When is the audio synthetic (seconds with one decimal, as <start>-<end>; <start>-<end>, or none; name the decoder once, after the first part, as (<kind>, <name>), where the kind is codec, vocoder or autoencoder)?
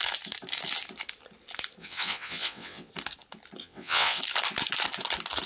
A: 1.8-2.9 (vocoder, WaveNeXt); 3.6-4.2